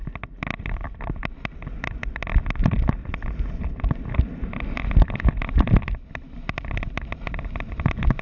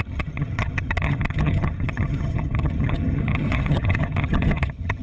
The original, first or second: first